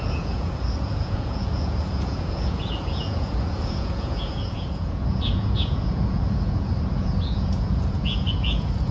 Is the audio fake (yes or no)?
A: yes